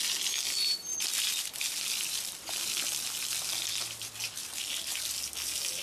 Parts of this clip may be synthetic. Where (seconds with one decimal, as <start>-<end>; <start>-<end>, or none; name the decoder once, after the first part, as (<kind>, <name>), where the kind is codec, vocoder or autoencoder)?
0.9-3.7 (vocoder, BigVGAN v2)

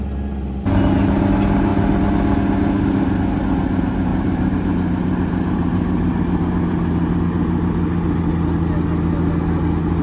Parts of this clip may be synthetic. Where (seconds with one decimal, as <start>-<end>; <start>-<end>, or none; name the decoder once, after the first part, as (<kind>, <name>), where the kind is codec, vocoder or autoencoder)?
4.1-7.2 (vocoder, BigVGAN v2)

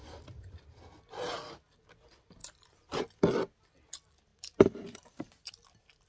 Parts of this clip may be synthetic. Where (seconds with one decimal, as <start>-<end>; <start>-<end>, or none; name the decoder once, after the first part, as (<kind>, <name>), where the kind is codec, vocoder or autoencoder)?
0.0-1.0 (vocoder, BigVGAN v2); 2.4-3.0; 4.3-5.5

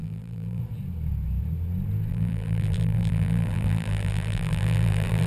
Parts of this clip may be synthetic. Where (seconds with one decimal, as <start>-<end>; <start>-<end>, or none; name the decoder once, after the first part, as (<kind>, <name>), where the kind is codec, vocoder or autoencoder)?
0.0-0.6 (vocoder, BigVGAN v2); 2.1-5.3

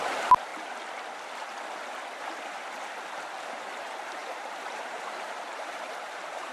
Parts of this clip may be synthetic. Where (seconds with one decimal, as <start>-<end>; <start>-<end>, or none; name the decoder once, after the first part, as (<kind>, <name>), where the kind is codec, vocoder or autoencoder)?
0.0-0.5 (vocoder, BigVGAN v2); 3.5-6.5

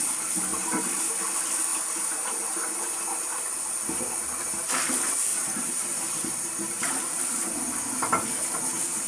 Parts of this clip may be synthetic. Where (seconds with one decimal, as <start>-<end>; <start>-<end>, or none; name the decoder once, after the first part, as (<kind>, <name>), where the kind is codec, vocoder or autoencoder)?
0.5-1.1 (vocoder, BigVGAN v2); 5.3-7.6